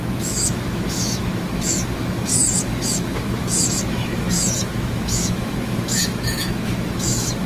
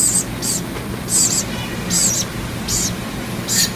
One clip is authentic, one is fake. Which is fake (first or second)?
first